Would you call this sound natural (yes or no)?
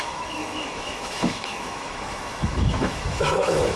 no